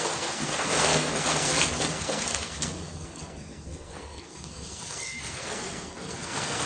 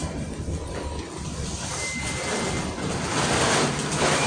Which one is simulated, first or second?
first